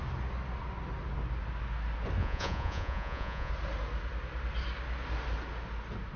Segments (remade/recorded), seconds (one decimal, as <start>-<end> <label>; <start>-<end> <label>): 0.0-2.2 recorded; 2.2-3.5 remade; 3.5-6.2 recorded